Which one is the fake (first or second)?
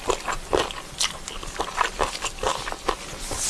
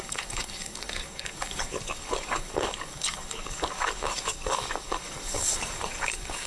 second